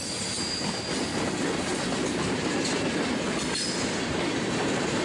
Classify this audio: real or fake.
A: real